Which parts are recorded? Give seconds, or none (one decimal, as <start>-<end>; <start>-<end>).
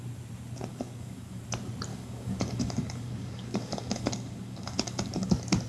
0.0-0.7; 1.4-1.9; 5.3-5.7